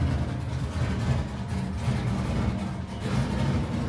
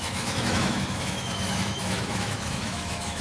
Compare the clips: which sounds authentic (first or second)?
first